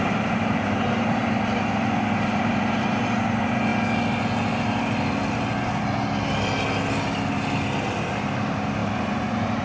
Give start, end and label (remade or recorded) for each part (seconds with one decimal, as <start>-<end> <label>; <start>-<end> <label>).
0.0-1.2 remade; 1.2-2.4 recorded; 2.4-3.7 remade; 3.7-8.1 recorded; 8.1-9.6 remade